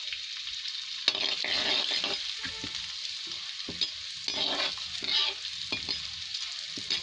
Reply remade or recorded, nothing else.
recorded